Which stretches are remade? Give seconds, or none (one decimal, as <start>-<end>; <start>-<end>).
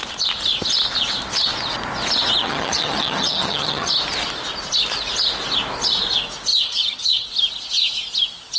2.4-3.9; 6.5-7.3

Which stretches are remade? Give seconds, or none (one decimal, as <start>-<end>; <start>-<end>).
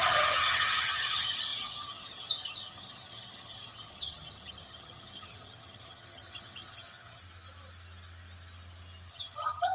0.0-7.2; 9.1-9.7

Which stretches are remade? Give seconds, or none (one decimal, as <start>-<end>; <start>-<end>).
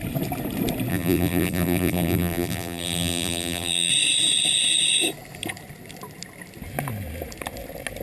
0.9-3.9